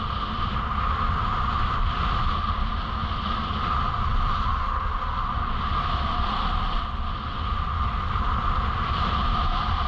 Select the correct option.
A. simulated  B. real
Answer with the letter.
B